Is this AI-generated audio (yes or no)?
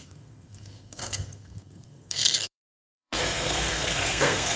yes